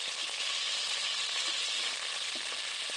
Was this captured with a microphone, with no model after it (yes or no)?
yes